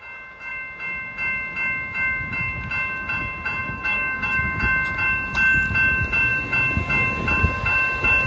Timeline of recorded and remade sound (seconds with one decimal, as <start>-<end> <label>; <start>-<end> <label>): 0.0-3.6 recorded; 3.6-4.4 remade; 4.4-8.3 recorded

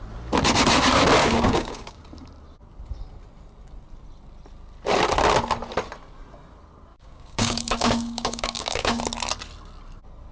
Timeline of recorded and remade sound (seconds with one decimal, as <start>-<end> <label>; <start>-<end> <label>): 0.0-1.2 recorded; 1.2-2.0 remade; 2.0-6.9 recorded; 6.9-9.0 remade; 9.0-10.3 recorded

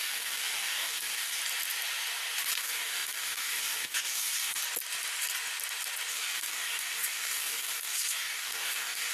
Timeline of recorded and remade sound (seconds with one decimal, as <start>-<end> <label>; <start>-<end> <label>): 0.0-1.4 remade; 1.4-2.6 recorded; 2.6-4.6 remade; 4.6-6.1 recorded; 6.1-9.1 remade

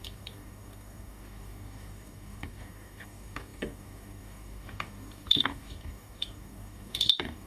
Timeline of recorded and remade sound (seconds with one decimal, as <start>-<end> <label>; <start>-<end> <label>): 0.0-7.5 remade

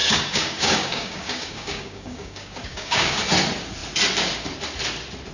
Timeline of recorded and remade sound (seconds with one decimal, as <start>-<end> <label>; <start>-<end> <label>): 0.0-3.2 remade; 3.2-5.3 recorded

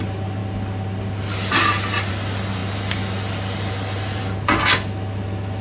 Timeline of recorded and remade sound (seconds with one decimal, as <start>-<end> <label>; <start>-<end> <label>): 0.0-5.6 recorded

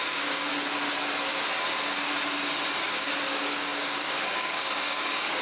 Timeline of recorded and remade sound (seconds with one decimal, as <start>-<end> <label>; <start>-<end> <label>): 0.0-0.5 remade; 0.5-2.9 recorded; 2.9-5.4 remade